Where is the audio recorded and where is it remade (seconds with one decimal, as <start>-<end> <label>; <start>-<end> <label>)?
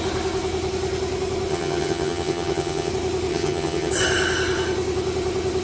0.0-1.5 recorded; 1.5-2.9 remade; 2.9-3.3 recorded; 3.3-3.9 remade; 3.9-5.6 recorded